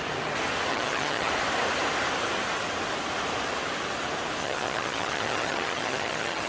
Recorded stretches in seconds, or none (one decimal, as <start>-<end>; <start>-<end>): 0.0-0.7; 1.3-4.4